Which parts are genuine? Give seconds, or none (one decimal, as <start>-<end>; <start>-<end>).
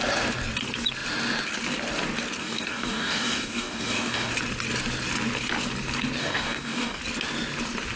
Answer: 0.0-2.4; 4.3-6.2; 7.0-8.0